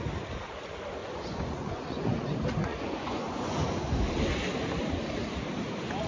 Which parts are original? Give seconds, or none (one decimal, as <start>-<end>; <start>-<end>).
0.0-1.0; 2.2-2.6; 3.6-6.1